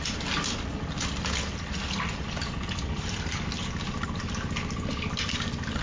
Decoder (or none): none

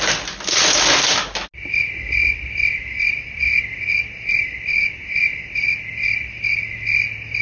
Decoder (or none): none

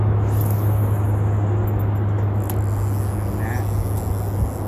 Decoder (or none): none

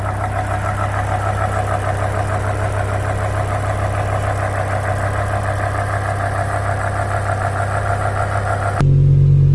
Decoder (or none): none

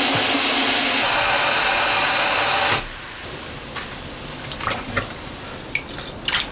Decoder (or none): none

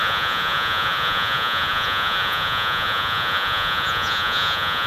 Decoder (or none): vocoder, Vocos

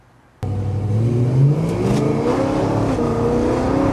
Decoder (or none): none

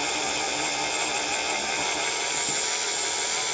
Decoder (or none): none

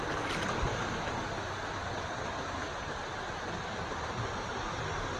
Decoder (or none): none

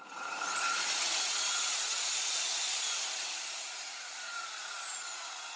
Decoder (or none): vocoder, Vocos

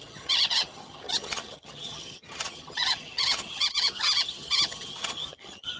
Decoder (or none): vocoder, HiFi-GAN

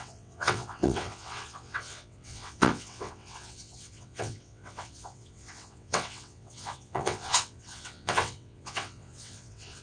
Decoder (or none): vocoder, WaveNeXt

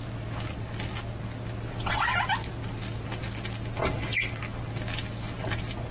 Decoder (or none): none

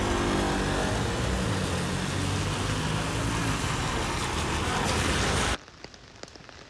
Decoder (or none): none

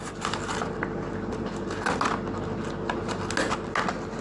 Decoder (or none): none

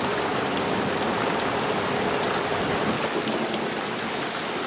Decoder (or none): none